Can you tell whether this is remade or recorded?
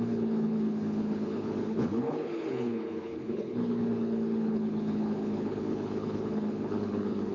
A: remade